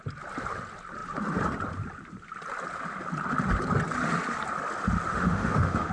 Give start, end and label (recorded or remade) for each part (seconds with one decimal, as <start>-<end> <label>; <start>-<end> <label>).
0.0-5.1 recorded; 5.1-5.9 remade